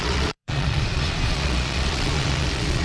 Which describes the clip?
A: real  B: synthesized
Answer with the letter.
B